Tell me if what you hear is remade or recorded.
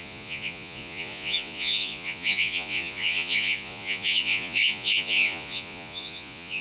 remade